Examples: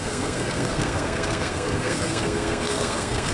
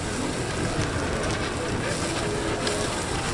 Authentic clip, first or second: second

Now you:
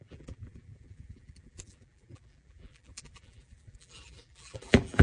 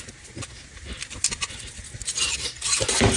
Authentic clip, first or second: second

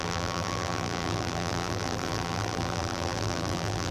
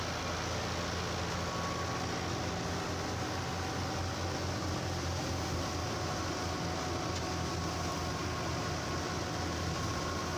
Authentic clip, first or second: second